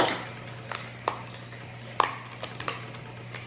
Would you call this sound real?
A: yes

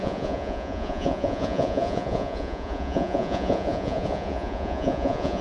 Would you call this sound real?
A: no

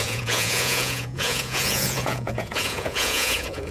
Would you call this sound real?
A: no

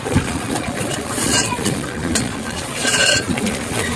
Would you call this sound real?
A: no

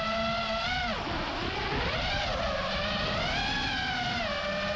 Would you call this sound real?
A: yes